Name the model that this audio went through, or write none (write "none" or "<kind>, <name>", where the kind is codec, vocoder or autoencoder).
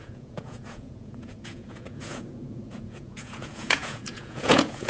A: vocoder, Vocos